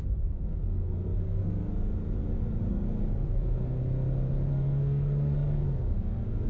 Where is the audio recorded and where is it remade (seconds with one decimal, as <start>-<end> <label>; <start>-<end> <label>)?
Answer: 0.0-1.7 remade; 1.7-2.7 recorded; 2.7-3.8 remade; 3.8-4.5 recorded; 4.5-6.5 remade